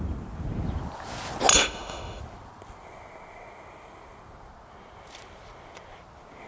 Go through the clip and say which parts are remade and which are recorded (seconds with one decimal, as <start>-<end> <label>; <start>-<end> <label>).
0.0-1.5 recorded; 1.5-2.2 remade; 2.2-6.5 recorded